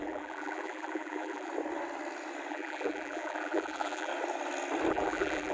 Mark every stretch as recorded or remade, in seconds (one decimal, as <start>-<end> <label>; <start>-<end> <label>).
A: 0.0-1.5 remade; 1.5-2.5 recorded; 2.5-4.1 remade; 4.1-4.9 recorded; 4.9-5.5 remade